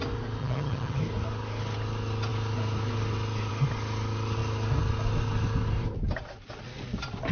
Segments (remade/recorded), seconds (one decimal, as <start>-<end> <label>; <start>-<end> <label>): 0.0-0.4 recorded; 0.4-1.0 remade; 1.0-7.3 recorded